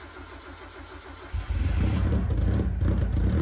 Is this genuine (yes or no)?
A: yes